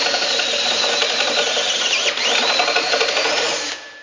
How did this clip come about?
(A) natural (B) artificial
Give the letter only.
A